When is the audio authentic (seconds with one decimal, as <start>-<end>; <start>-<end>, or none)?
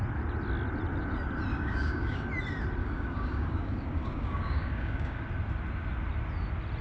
0.0-1.5; 2.3-2.8; 5.2-6.8